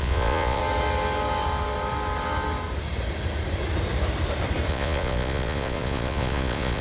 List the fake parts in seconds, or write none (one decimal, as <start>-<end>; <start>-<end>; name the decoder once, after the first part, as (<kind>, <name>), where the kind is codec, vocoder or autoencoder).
0.0-0.6 (vocoder, Vocos); 4.7-6.8